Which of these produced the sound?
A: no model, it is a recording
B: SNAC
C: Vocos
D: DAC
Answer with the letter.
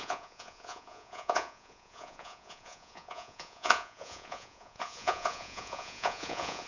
C